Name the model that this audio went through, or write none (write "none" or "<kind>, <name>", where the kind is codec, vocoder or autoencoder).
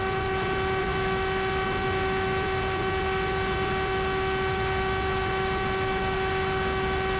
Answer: none